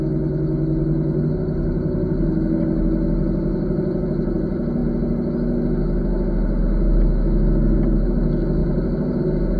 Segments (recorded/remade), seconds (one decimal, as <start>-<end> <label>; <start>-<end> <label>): 0.0-8.6 recorded; 8.6-9.2 remade; 9.2-9.6 recorded